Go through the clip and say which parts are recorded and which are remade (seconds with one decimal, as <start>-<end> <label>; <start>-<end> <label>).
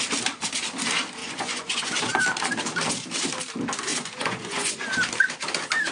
0.0-1.2 recorded; 1.2-2.2 remade; 2.2-3.9 recorded; 3.9-4.9 remade; 4.9-5.9 recorded